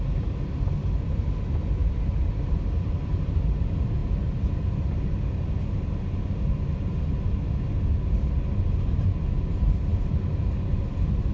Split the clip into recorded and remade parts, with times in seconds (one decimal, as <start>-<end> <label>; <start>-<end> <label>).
0.0-11.3 recorded